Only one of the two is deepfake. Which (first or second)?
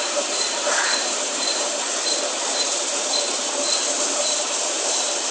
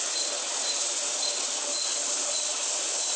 first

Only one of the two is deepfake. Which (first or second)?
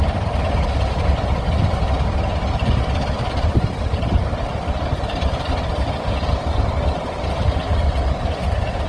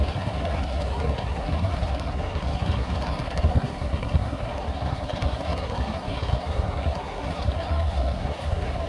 second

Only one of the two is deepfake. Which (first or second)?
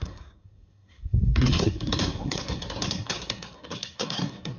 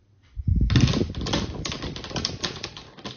first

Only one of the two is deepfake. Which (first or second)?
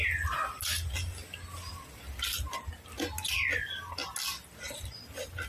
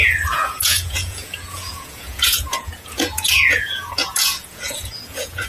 second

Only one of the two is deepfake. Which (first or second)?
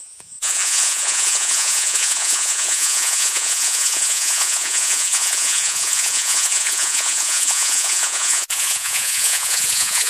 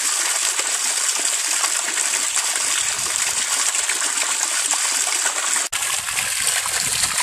first